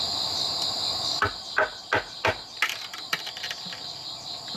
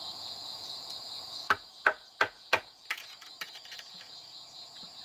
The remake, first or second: second